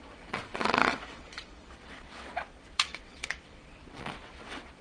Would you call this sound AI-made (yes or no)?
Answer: yes